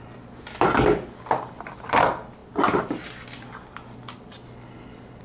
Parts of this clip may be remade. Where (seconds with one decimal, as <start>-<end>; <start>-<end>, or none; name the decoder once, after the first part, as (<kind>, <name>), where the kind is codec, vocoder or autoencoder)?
none